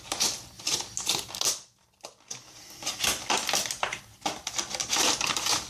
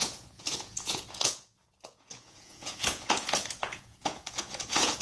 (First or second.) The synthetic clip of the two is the second